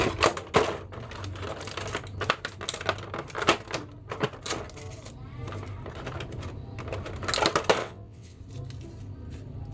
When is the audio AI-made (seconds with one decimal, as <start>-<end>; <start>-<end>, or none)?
7.8-8.4